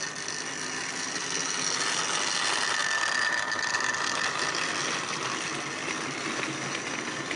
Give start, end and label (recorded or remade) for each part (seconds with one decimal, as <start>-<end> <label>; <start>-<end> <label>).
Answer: 0.0-7.4 recorded